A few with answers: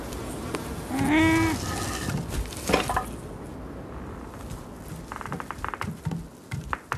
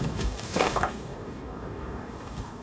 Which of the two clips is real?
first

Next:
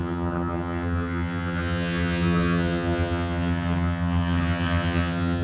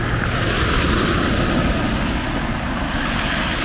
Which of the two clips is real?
second